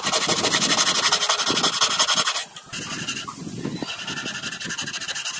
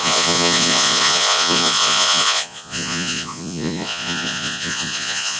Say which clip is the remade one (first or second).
second